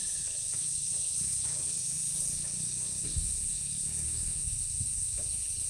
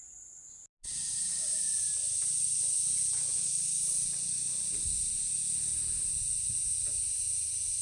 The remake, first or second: first